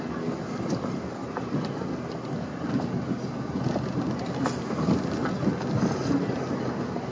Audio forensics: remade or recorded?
recorded